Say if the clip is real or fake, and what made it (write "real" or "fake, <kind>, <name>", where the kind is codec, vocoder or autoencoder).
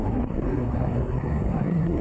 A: fake, codec, SNAC